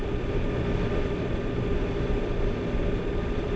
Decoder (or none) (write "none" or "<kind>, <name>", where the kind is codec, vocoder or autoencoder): none